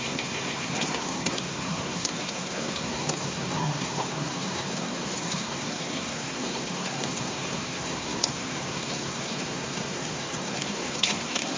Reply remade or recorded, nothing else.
remade